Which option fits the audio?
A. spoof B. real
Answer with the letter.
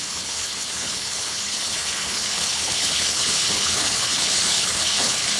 A